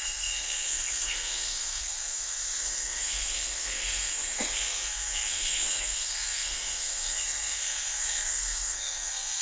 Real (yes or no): no